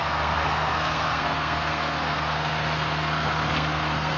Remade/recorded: remade